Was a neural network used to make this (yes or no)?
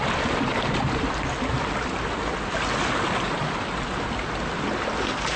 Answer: no